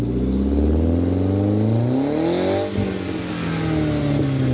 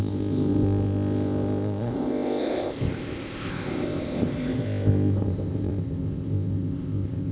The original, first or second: first